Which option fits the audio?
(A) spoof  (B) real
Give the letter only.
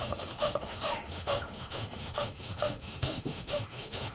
A